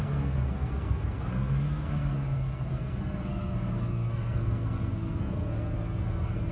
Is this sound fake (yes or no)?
yes